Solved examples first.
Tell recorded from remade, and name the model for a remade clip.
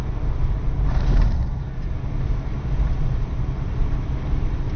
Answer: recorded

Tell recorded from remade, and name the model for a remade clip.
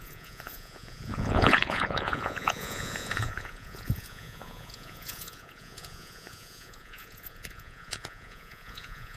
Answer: remade, vocoder, Vocos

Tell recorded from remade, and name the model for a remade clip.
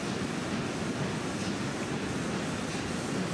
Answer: recorded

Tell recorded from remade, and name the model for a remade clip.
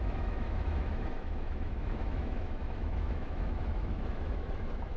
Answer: remade, autoencoder, DAC-VAE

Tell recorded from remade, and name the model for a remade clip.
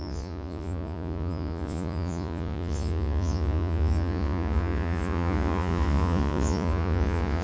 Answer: remade, vocoder, Vocos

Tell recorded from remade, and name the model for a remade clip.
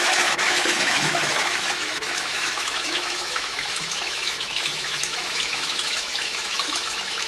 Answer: remade, autoencoder, DAC-VAE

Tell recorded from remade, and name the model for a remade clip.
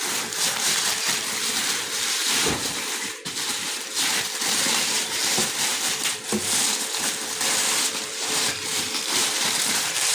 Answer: remade, vocoder, BigVGAN v2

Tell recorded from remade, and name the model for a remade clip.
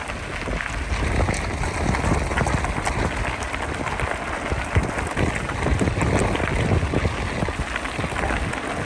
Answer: recorded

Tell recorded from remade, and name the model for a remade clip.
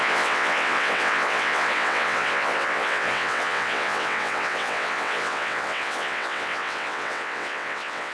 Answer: remade, vocoder, WaveNeXt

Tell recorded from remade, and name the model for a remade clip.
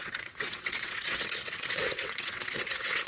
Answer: remade, vocoder, WaveNeXt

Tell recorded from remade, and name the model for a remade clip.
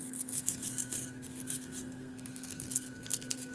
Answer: remade, codec, SNAC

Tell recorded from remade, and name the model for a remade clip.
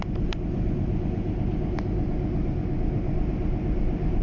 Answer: recorded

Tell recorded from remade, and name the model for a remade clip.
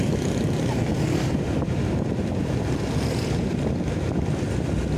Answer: recorded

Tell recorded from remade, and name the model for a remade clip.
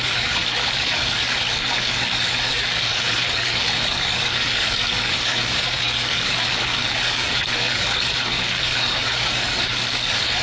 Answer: remade, codec, DAC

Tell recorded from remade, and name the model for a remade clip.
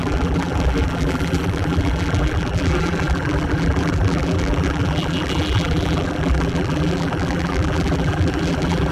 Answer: remade, vocoder, BigVGAN v2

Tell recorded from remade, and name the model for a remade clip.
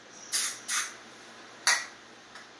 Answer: recorded